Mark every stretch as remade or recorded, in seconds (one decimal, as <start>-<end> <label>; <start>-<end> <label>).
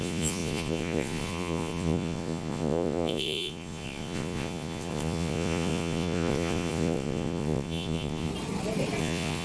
0.0-8.3 remade; 8.3-9.0 recorded; 9.0-9.4 remade